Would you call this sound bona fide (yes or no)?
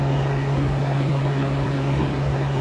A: no